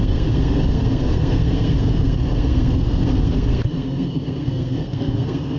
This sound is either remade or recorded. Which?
remade